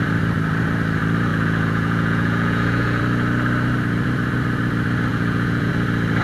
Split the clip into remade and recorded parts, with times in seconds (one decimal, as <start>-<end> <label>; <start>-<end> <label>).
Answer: 0.0-1.3 recorded; 1.3-3.0 remade; 3.0-5.1 recorded; 5.1-5.7 remade; 5.7-6.2 recorded

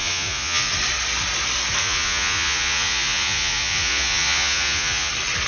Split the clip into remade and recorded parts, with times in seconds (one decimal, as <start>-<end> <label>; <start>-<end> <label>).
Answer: 0.0-0.7 remade; 0.7-1.8 recorded; 1.8-5.1 remade; 5.1-5.5 recorded